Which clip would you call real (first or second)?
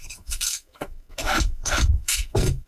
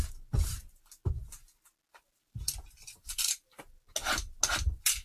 second